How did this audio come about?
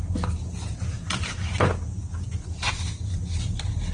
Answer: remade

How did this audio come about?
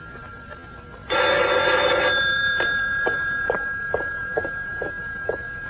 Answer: recorded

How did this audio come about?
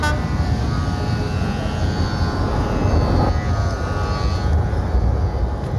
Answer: recorded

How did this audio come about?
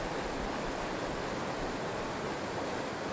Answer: remade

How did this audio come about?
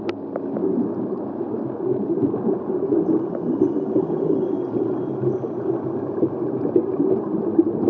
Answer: recorded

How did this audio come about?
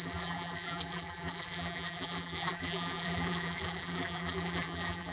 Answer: remade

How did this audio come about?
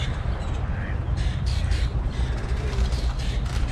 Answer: remade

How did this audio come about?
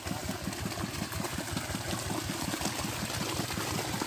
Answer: recorded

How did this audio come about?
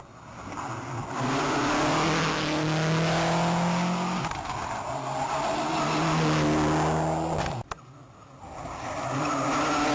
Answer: recorded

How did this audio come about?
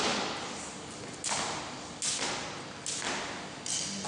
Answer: recorded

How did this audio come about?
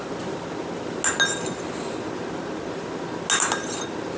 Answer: recorded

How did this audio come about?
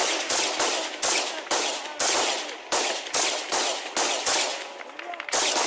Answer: remade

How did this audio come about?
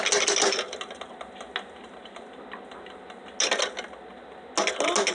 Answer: recorded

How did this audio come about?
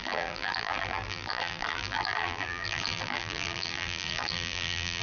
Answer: remade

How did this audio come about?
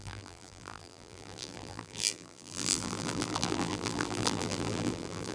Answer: remade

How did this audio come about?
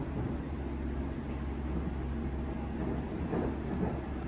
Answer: recorded